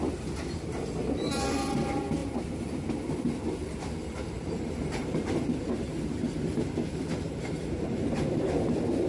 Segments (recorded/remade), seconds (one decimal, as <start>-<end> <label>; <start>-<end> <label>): 0.0-2.2 recorded; 2.2-2.8 remade; 2.8-3.6 recorded; 3.6-8.5 remade; 8.5-9.1 recorded